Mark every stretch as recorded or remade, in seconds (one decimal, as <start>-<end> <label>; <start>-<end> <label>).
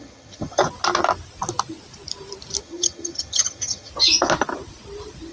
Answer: 0.0-0.6 remade; 0.6-2.6 recorded; 2.6-3.9 remade; 3.9-5.3 recorded